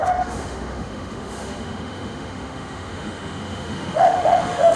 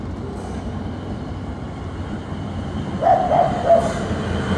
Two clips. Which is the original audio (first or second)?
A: second